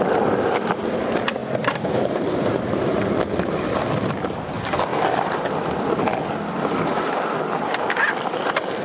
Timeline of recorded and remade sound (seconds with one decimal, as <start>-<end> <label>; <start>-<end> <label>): 0.0-1.4 recorded; 1.4-3.1 remade; 3.1-6.9 recorded; 6.9-7.8 remade; 7.8-8.8 recorded